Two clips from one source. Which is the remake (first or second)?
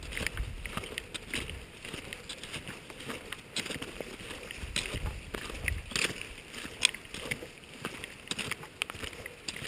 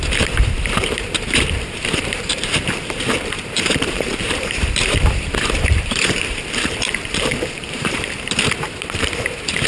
second